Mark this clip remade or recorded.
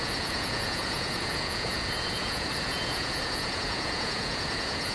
remade